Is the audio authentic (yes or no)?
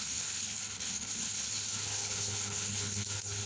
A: no